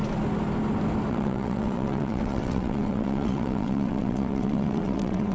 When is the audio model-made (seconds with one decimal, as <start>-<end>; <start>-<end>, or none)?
1.1-5.3